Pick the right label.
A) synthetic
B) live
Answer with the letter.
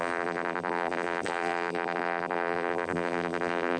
A